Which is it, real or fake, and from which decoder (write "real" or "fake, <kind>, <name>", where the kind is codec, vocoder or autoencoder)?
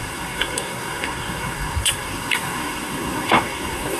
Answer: fake, codec, SNAC